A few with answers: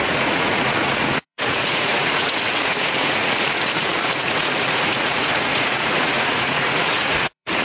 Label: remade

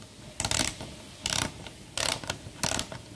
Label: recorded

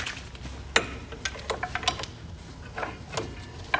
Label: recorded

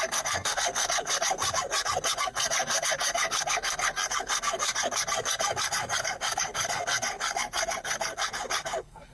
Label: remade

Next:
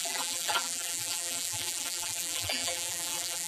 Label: remade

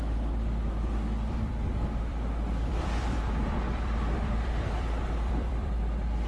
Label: remade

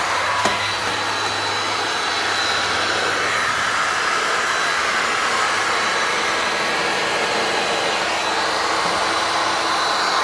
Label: recorded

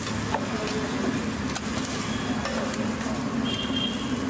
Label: recorded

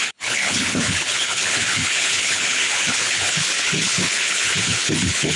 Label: remade